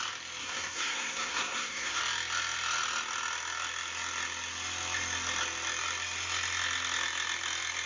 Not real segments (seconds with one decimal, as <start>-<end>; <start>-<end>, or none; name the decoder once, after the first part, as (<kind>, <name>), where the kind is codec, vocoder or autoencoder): 0.4-2.0 (codec, SNAC)